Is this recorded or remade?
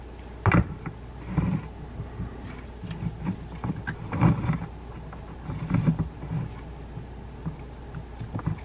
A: recorded